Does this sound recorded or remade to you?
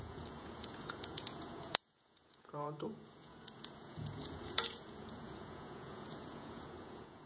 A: remade